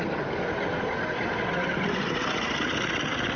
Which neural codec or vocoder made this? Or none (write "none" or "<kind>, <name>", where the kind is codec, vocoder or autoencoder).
none